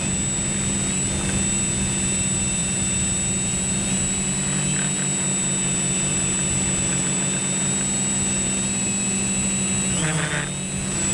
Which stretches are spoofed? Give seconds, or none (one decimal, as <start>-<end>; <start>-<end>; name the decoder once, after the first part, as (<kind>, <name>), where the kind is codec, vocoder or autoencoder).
none